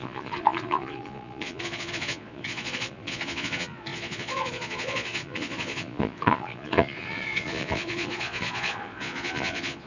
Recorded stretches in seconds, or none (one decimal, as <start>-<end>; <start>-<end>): none